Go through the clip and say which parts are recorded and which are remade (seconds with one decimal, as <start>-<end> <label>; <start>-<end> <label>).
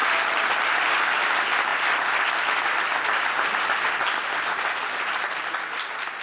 0.0-6.2 recorded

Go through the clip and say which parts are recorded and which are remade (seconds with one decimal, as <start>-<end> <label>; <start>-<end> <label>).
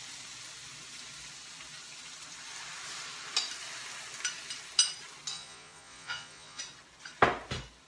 0.0-5.3 recorded; 5.3-6.6 remade; 6.6-7.9 recorded